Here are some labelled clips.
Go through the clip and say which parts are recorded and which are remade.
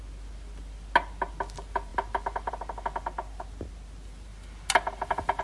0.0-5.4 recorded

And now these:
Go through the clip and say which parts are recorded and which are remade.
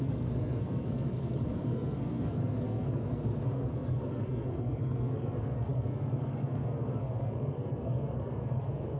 0.0-9.0 remade